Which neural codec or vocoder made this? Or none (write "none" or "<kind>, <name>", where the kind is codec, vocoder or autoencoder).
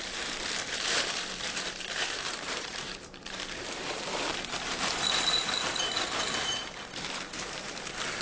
vocoder, BigVGAN v2